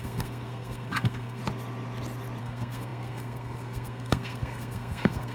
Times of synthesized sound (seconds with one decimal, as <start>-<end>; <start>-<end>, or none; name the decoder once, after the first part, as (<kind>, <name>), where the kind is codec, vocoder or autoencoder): 0.0-1.4 (codec, SNAC); 2.4-5.3